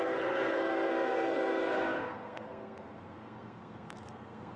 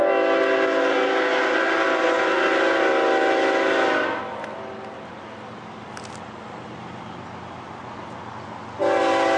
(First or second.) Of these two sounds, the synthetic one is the first